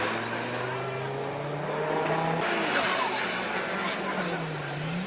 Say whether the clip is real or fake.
real